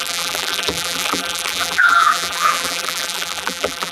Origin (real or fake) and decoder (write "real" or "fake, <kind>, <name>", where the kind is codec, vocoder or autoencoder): fake, vocoder, BigVGAN v2